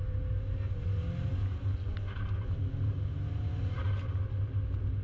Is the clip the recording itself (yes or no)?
yes